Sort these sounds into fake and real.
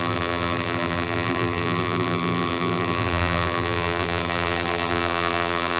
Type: fake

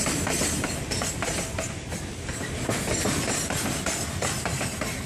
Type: real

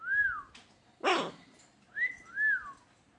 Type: real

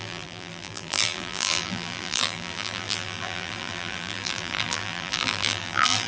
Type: fake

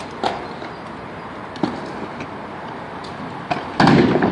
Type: real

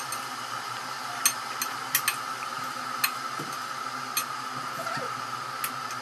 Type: real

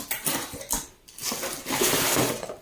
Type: real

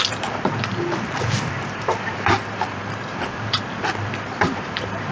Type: fake